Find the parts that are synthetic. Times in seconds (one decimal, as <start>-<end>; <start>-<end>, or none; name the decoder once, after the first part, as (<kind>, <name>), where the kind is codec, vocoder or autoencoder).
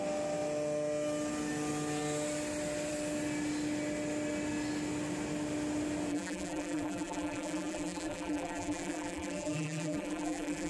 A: 6.1-10.7 (vocoder, BigVGAN v2)